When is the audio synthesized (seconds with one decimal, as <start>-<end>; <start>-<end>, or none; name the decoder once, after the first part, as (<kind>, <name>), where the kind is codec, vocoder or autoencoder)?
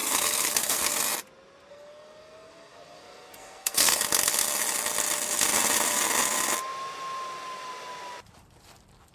0.0-1.0 (codec, SNAC); 1.7-4.0